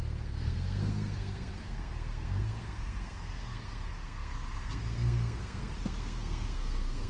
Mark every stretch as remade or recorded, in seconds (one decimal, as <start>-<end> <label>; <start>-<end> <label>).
0.0-7.1 remade